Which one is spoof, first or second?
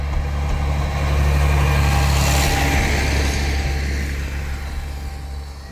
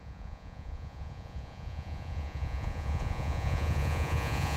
second